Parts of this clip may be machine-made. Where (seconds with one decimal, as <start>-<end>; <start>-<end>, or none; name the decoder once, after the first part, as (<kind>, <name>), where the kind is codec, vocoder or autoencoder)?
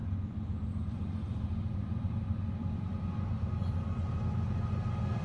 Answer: 0.0-3.1 (vocoder, BigVGAN v2)